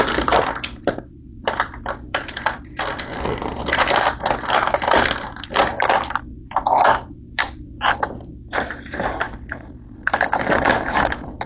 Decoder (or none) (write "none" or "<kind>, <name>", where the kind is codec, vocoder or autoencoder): vocoder, BigVGAN v2